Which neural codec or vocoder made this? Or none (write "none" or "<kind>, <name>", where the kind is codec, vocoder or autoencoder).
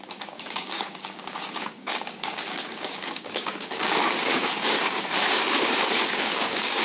codec, DAC